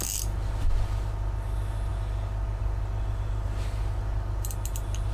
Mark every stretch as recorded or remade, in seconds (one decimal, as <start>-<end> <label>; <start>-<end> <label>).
0.0-5.1 recorded